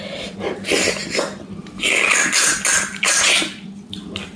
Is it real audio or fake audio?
real